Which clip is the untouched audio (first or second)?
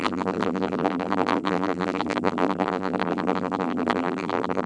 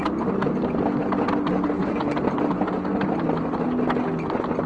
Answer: second